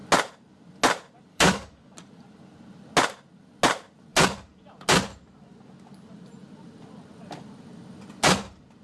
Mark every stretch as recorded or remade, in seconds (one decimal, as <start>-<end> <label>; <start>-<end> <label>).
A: 0.0-1.3 recorded; 1.3-1.9 remade; 1.9-8.8 recorded